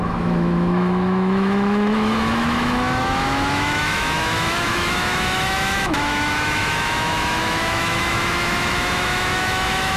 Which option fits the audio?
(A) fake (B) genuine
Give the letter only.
A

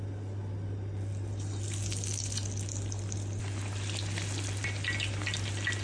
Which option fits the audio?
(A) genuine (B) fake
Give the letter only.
A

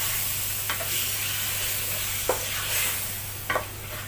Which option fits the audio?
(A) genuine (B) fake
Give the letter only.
A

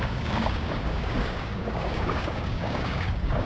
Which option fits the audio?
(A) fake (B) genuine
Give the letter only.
A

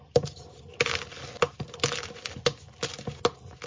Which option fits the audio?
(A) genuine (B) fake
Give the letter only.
A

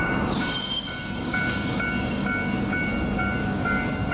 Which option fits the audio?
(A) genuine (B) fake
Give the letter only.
B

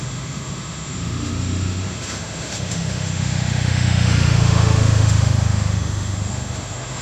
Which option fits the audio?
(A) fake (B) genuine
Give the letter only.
A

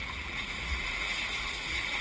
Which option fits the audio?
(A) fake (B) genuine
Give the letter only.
A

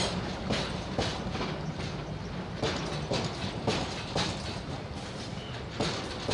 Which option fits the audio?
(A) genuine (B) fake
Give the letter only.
A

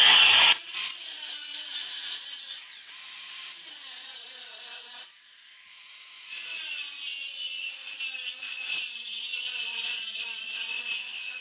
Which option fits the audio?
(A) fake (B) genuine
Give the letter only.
A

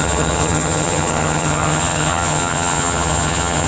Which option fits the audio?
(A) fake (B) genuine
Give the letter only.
A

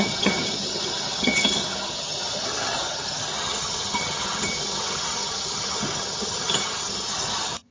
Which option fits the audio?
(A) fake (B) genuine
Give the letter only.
A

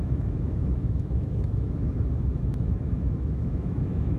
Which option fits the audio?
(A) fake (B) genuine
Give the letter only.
A